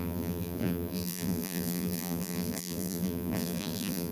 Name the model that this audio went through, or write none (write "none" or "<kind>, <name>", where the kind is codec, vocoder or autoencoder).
vocoder, BigVGAN v2